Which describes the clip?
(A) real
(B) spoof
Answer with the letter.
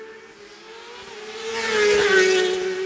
A